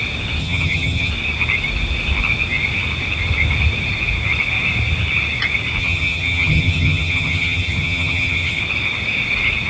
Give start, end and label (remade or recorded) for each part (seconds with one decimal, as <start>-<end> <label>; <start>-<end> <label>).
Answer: 0.0-0.4 recorded; 0.4-1.1 remade; 1.1-5.8 recorded; 5.8-8.6 remade; 8.6-9.7 recorded